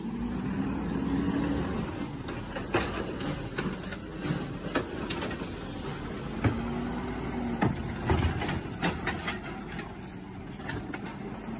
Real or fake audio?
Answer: real